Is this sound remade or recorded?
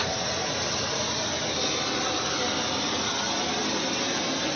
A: recorded